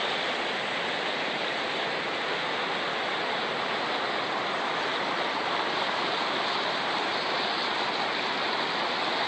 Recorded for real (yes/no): yes